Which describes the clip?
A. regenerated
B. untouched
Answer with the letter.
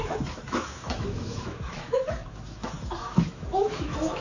A